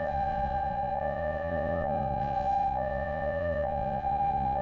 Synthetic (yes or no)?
yes